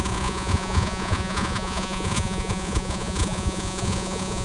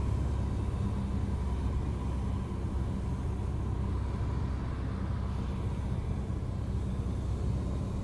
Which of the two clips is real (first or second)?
second